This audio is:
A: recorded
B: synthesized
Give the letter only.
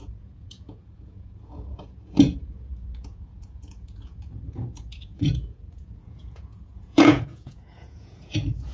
B